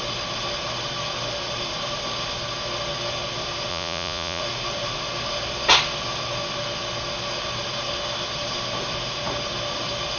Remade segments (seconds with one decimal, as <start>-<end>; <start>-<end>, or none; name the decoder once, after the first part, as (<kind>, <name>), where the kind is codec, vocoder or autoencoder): 3.7-4.4 (vocoder, Vocos)